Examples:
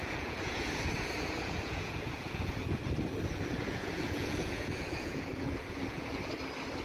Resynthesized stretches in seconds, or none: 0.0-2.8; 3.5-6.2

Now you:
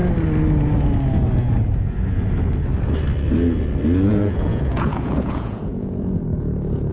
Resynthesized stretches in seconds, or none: 4.1-6.9

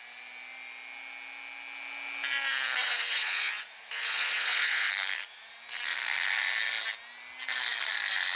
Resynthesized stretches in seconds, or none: 2.8-4.9

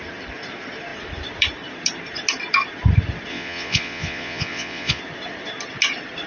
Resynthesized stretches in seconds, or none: 3.3-5.0